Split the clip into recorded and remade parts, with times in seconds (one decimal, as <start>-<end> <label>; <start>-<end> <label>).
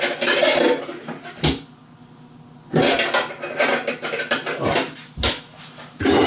0.0-6.3 recorded